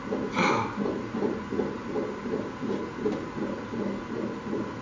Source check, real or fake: real